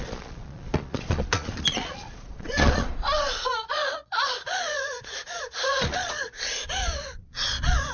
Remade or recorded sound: remade